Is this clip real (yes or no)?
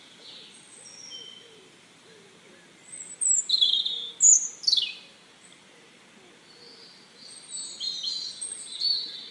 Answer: yes